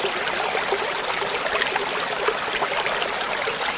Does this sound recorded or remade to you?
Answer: recorded